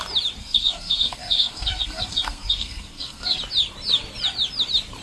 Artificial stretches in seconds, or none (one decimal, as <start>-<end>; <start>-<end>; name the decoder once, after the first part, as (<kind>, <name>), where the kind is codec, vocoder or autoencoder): 0.4-3.4 (codec, SNAC)